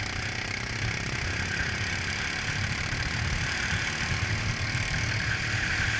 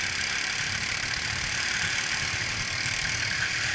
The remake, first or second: second